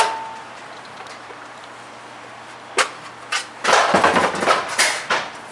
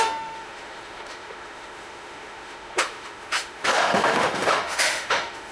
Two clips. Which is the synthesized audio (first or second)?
second